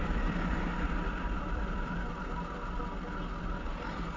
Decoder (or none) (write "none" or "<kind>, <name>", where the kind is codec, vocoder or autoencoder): vocoder, BigVGAN v2